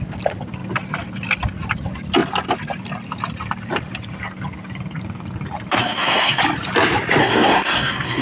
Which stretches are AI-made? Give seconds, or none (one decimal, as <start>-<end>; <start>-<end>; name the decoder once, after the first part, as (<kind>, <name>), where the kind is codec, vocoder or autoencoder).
5.8-6.4 (codec, SNAC); 7.2-8.2